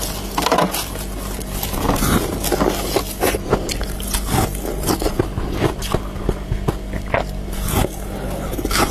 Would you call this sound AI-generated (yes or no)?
no